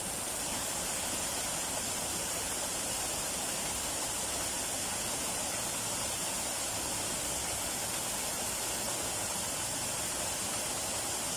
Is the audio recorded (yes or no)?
yes